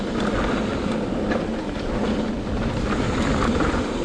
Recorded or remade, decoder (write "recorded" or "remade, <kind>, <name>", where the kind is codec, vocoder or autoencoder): recorded